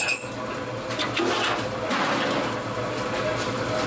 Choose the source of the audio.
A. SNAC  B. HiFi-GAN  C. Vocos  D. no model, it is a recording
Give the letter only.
D